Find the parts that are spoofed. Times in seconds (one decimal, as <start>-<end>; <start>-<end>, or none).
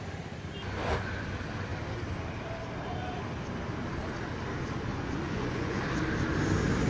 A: 4.9-5.8